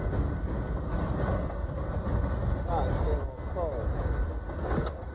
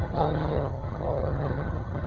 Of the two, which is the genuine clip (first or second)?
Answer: first